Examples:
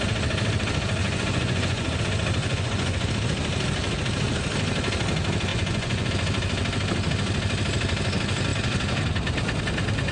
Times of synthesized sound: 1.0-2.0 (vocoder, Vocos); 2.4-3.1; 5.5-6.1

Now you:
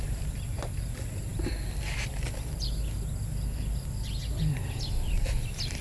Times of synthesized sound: none

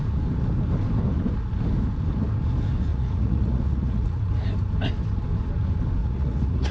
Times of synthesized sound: 2.9-4.2 (vocoder, Vocos); 6.0-6.7